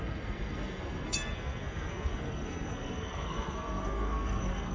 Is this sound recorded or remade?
remade